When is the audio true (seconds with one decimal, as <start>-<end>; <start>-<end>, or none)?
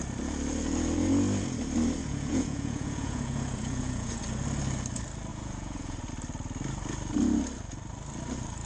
0.0-2.0; 4.2-5.3; 6.1-8.7